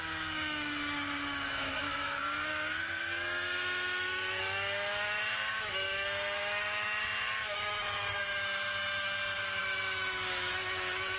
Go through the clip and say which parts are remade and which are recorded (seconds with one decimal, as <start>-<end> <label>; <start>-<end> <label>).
0.0-11.2 remade